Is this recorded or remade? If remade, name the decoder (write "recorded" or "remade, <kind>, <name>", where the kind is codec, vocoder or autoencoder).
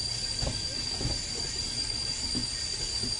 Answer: recorded